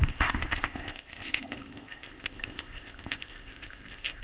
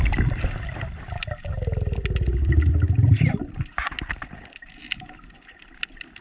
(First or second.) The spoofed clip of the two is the first